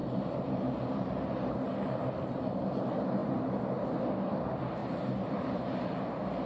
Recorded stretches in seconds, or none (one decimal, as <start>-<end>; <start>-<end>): 2.8-3.2; 4.0-4.8; 5.8-6.5